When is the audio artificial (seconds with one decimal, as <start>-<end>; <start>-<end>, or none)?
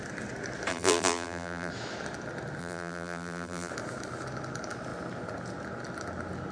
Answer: 0.7-1.7; 2.6-3.7